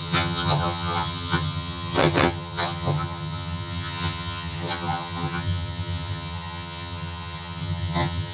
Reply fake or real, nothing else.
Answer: fake